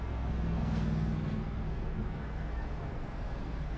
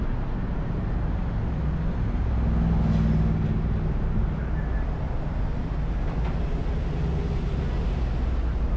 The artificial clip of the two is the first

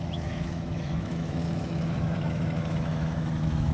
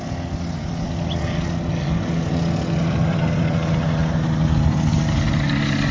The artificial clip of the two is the first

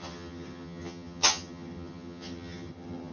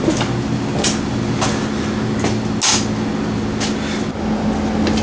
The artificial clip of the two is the first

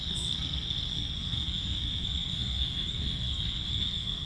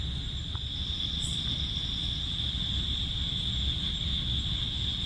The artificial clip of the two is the first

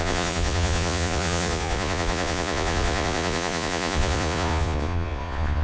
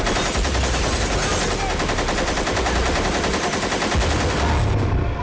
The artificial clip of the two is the first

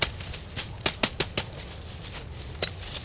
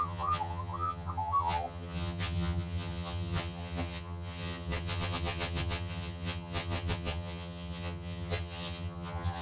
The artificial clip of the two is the second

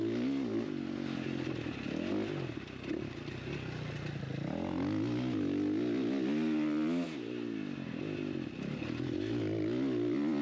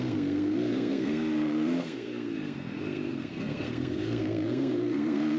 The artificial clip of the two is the second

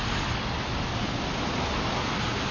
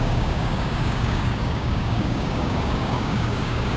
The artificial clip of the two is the second